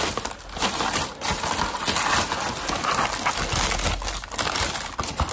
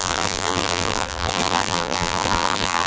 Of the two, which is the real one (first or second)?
first